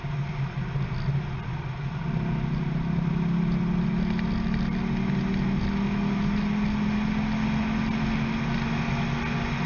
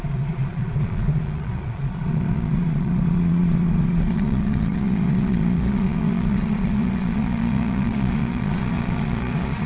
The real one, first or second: first